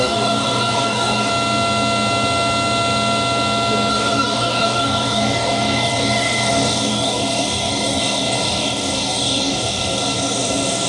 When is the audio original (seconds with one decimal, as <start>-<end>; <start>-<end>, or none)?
1.3-3.9